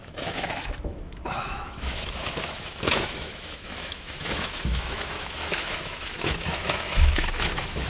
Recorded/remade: remade